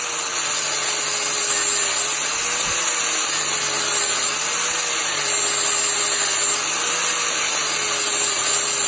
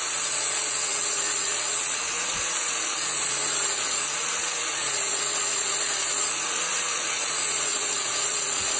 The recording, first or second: first